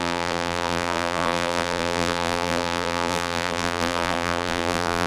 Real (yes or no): no